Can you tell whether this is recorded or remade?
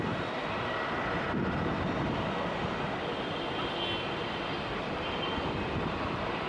recorded